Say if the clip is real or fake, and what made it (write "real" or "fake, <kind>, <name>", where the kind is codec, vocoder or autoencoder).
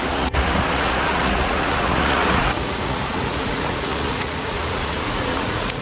fake, vocoder, Vocos